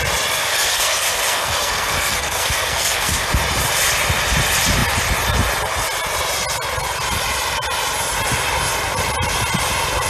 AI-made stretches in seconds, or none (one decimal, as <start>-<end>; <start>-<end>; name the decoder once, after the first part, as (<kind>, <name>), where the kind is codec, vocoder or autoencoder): 0.4-3.3 (codec, SNAC)